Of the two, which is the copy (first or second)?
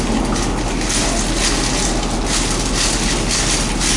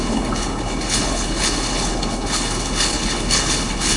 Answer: second